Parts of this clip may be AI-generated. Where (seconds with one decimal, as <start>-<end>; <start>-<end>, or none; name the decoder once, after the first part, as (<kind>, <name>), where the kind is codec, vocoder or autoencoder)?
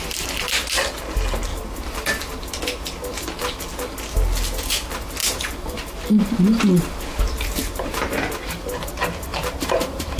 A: 5.2-8.9 (vocoder, BigVGAN v2); 9.3-10.2